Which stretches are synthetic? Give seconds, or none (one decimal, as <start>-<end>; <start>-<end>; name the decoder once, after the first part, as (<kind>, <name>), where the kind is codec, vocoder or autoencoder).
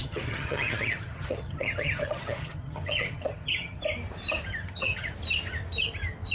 0.0-3.8 (vocoder, HiFi-GAN); 4.6-5.1